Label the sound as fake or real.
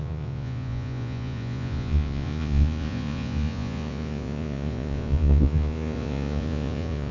fake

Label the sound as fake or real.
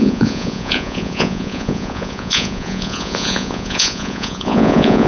fake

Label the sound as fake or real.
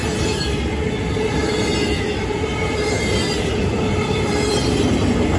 real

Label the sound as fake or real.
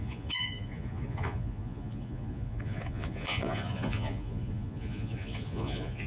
fake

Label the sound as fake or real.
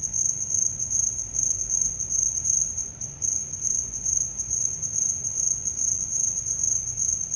fake